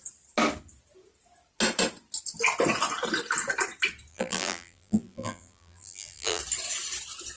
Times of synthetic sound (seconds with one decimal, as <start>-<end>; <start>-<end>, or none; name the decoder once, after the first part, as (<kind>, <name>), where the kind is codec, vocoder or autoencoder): 4.1-6.4 (vocoder, BigVGAN v2)